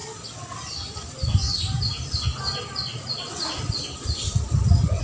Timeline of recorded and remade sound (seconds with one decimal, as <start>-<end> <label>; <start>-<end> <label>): 0.0-5.0 recorded